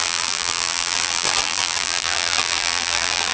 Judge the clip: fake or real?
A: fake